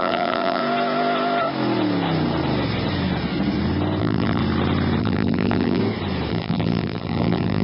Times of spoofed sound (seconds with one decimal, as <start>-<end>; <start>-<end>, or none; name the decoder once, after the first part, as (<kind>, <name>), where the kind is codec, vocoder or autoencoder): 0.0-0.6 (vocoder, BigVGAN v2); 4.0-4.4; 5.0-5.8; 6.3-7.6